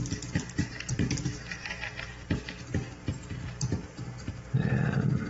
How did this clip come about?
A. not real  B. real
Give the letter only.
B